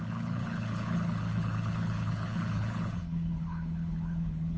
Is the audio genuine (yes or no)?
no